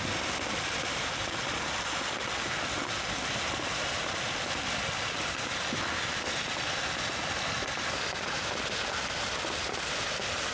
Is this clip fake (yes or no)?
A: no